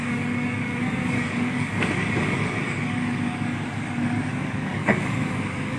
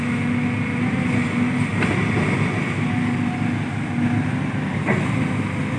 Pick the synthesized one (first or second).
first